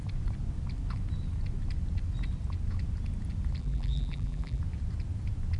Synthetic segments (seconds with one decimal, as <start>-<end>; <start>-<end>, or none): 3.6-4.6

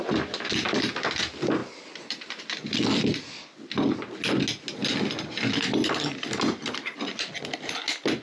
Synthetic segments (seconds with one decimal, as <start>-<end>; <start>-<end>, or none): none

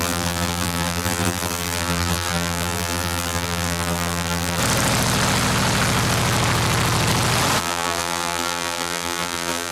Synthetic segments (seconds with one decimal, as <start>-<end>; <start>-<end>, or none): 0.0-4.6; 7.6-9.7